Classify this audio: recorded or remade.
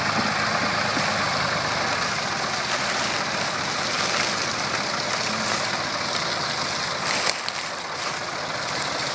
recorded